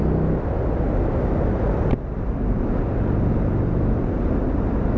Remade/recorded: recorded